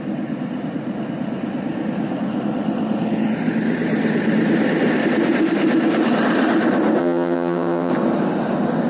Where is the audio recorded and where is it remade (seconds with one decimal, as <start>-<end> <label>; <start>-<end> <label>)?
0.0-7.0 recorded; 7.0-7.9 remade; 7.9-8.9 recorded